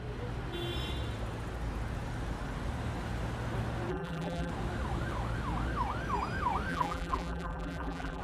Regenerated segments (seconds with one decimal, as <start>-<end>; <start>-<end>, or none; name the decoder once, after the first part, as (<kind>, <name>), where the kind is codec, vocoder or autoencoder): 3.9-4.5 (vocoder, BigVGAN v2); 6.7-8.2